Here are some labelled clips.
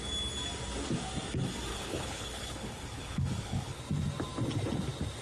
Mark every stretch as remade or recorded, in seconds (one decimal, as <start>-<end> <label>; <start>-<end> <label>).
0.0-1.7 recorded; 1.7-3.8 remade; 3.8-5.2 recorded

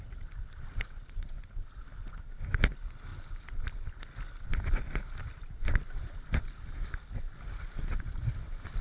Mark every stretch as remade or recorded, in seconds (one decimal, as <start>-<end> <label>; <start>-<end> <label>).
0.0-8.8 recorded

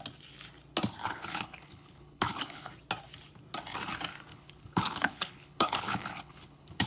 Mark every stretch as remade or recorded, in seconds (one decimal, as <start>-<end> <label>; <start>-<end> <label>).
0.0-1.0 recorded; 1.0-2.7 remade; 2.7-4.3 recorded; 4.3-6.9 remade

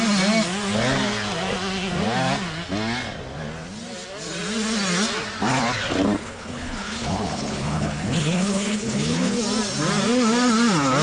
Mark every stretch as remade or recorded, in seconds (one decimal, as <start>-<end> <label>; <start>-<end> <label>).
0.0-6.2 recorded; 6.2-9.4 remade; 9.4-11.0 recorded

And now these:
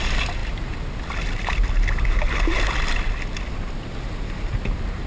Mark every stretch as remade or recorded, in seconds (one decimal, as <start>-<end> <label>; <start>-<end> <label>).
0.0-5.1 recorded

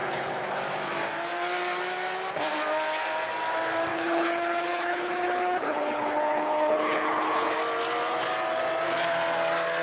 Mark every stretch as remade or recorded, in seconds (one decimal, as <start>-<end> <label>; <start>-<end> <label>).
0.0-0.6 remade; 0.6-3.9 recorded; 3.9-7.6 remade; 7.6-9.8 recorded

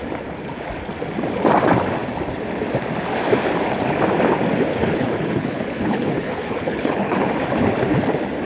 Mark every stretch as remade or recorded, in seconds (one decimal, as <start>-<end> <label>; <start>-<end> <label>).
0.0-4.7 recorded; 4.7-7.3 remade; 7.3-8.5 recorded